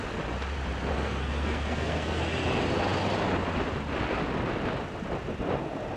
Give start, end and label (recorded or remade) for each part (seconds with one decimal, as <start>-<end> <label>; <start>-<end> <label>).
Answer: 0.0-0.9 recorded; 0.9-2.2 remade; 2.2-6.0 recorded